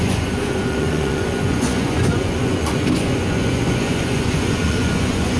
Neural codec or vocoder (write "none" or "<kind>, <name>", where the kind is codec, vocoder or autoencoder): vocoder, Vocos